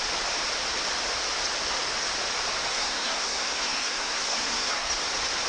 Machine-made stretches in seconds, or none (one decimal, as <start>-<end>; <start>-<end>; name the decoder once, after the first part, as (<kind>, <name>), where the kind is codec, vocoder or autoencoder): 2.7-4.9 (codec, SNAC)